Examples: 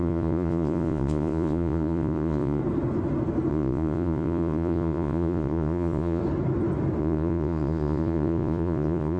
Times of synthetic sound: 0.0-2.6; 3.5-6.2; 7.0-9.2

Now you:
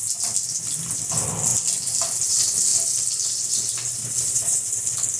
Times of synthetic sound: 4.0-4.7

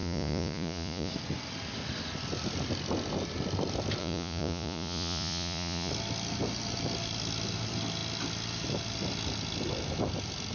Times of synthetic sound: 0.0-1.1; 4.0-5.9

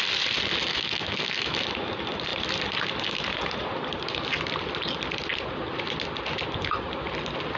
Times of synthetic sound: 0.7-1.7